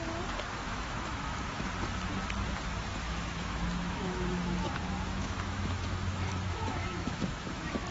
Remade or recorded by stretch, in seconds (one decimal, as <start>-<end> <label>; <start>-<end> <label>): 0.0-0.6 recorded; 0.6-1.7 remade; 1.7-2.9 recorded; 2.9-7.9 remade